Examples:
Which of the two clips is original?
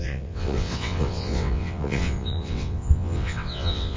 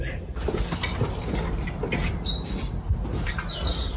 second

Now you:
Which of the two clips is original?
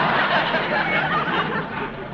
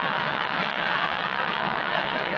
first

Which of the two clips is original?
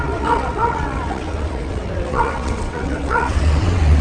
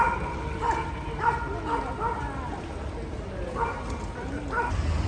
second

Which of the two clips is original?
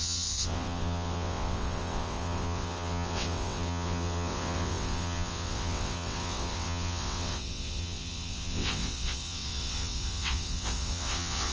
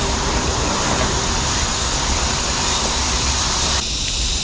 second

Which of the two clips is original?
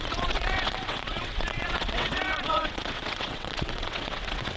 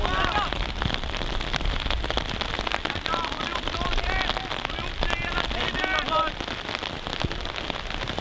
second